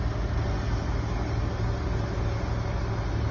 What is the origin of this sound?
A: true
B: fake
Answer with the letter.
A